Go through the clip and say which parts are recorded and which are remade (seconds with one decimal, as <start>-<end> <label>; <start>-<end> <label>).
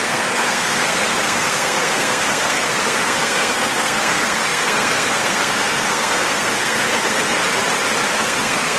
0.0-7.4 remade; 7.4-8.1 recorded; 8.1-8.8 remade